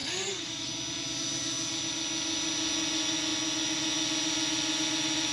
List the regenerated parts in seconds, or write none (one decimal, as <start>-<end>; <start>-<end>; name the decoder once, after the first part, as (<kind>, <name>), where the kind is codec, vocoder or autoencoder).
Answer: 0.0-0.7 (codec, DAC)